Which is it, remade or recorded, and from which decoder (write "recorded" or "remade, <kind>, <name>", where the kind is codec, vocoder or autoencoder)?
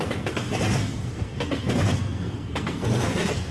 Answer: remade, codec, SNAC